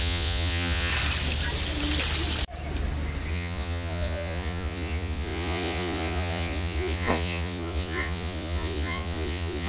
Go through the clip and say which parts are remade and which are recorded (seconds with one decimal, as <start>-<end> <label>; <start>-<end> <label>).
0.0-0.9 remade; 0.9-3.3 recorded; 3.3-9.7 remade